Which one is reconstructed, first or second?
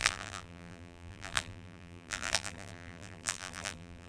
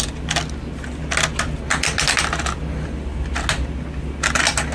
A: first